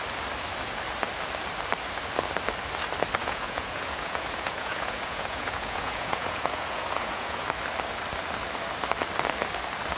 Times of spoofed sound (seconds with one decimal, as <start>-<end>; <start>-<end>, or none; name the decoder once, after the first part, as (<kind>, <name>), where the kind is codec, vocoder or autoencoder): 3.2-7.4 (vocoder, Vocos)